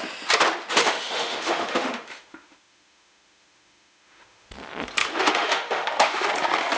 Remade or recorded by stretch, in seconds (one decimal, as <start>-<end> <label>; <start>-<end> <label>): 0.0-0.8 recorded; 0.8-4.5 remade; 4.5-5.0 recorded; 5.0-6.3 remade; 6.3-6.8 recorded